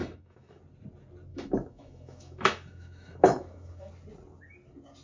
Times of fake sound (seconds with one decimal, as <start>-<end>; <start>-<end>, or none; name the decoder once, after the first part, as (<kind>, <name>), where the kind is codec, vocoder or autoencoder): 0.0-0.6 (autoencoder, DAC-VAE); 1.3-3.9